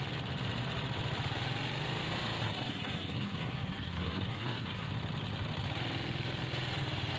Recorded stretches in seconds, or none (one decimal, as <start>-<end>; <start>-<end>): 0.0-2.4; 4.9-7.2

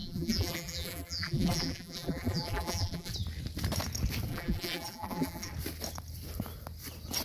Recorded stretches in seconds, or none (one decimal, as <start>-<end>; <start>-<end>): 3.1-4.3; 5.5-7.2

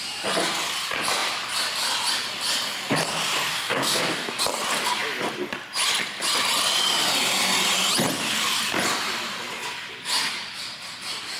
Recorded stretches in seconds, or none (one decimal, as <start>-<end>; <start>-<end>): 0.0-3.5; 4.4-11.4

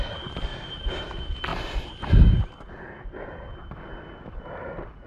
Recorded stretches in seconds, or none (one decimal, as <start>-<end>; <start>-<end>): 0.0-5.1

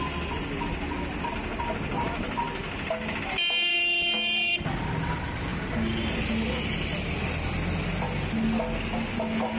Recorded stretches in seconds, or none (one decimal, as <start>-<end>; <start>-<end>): 0.0-9.6

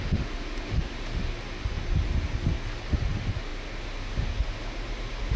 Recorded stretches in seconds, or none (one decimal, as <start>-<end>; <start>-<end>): 1.2-2.9

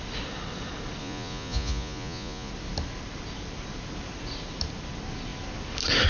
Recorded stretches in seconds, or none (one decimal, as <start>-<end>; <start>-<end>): 0.0-1.0; 2.5-6.1